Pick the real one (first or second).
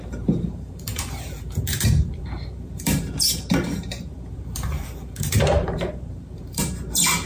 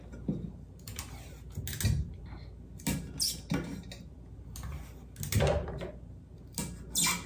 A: second